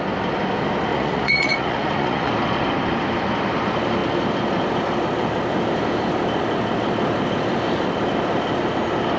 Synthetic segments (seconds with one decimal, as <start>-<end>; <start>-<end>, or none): 0.9-2.3